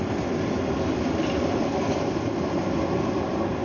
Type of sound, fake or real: real